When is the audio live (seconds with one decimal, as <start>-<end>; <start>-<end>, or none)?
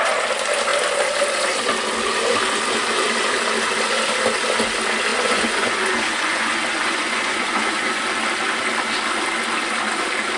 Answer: 0.0-5.1; 8.0-10.4